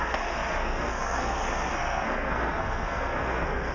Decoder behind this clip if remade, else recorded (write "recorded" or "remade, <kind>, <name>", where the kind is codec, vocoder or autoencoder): remade, codec, SNAC